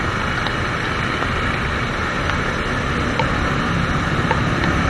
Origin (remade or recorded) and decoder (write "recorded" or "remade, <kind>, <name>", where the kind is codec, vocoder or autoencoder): recorded